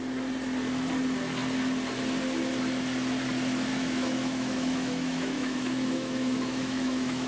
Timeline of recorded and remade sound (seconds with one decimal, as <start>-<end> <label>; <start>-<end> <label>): 0.0-3.7 recorded; 3.7-7.3 remade